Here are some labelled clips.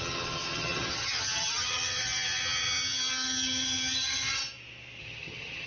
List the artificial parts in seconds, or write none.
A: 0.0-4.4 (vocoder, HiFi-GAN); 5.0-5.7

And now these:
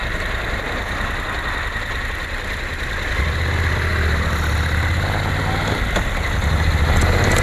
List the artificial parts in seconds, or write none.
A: 0.0-0.6 (vocoder, BigVGAN v2)

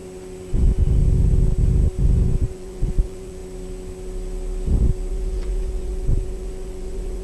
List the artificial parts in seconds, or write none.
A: 0.5-1.0 (vocoder, Vocos); 2.0-3.4; 5.1-7.2

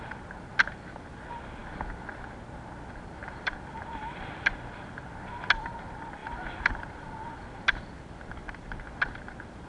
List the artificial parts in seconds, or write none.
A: 3.2-4.3 (vocoder, BigVGAN v2); 6.2-6.8; 8.4-9.0

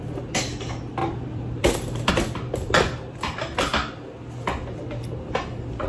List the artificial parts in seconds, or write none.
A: 1.0-2.1 (vocoder, BigVGAN v2)